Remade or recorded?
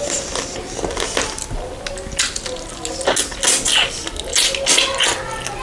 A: recorded